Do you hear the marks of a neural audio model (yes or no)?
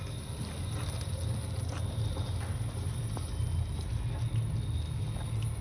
no